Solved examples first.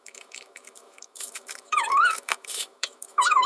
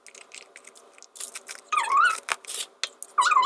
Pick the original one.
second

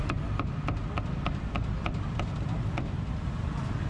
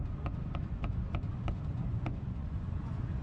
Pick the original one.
first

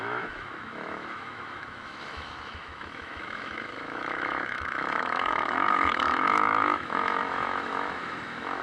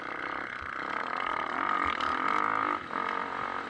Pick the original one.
second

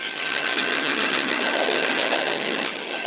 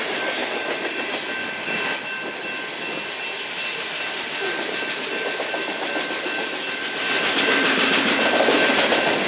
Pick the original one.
second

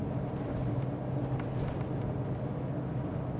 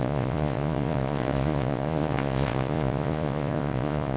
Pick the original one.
first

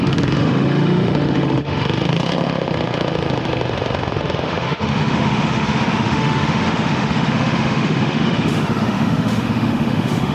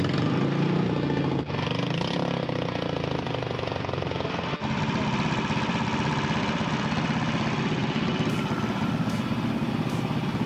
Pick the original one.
second